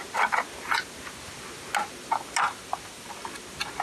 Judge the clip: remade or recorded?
recorded